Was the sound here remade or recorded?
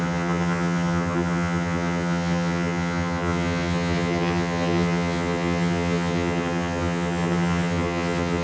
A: remade